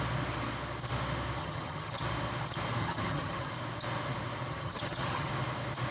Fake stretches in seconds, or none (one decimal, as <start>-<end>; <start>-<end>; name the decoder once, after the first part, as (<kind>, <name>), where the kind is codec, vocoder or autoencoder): 1.4-2.0 (vocoder, HiFi-GAN); 2.8-3.5; 4.5-5.3